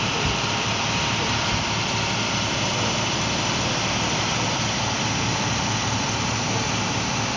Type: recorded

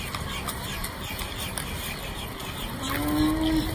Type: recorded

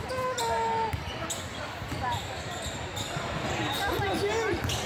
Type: recorded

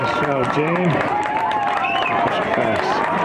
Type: remade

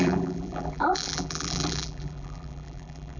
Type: remade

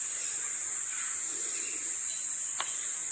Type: recorded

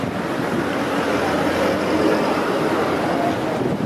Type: recorded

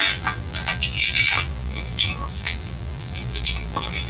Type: remade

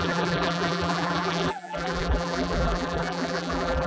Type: remade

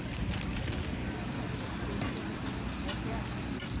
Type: remade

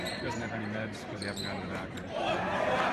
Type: remade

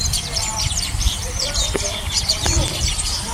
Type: remade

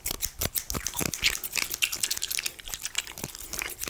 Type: recorded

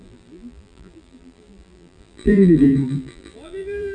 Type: remade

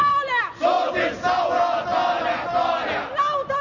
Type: recorded